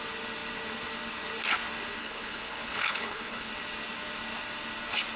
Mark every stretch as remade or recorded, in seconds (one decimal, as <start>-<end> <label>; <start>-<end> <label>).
0.0-2.0 recorded; 2.0-3.5 remade; 3.5-5.2 recorded